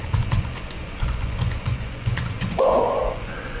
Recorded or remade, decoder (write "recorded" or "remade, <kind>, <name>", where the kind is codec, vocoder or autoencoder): remade, vocoder, Vocos